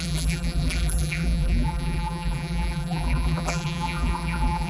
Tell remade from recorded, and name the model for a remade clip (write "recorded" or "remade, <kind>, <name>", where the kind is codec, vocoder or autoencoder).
remade, vocoder, BigVGAN v2